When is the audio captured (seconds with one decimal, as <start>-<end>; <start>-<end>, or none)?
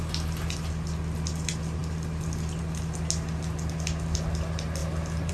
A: 0.0-5.3